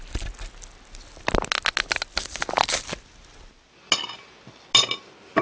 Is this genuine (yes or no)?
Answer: yes